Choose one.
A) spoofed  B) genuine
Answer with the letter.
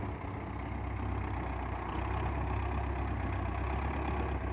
B